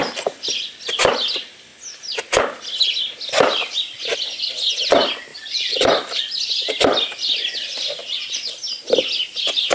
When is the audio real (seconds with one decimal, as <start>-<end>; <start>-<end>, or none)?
0.0-5.3; 6.2-9.7